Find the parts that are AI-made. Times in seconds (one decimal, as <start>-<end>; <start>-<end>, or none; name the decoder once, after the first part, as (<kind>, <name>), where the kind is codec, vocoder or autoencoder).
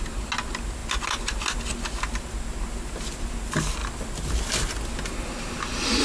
none